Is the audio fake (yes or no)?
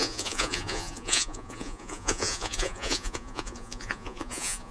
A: yes